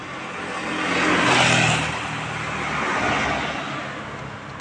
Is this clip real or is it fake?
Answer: real